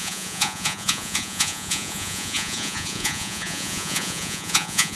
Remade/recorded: remade